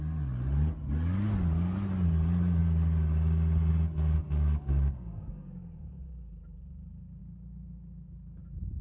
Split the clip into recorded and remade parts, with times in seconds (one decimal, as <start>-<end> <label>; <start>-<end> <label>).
0.0-4.2 recorded; 4.2-6.0 remade; 6.0-7.2 recorded; 7.2-8.4 remade; 8.4-8.8 recorded